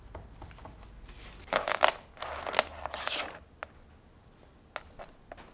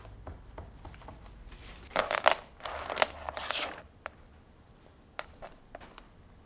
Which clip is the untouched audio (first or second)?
first